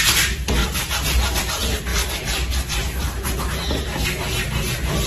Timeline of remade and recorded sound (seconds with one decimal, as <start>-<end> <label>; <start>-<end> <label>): 0.0-5.1 recorded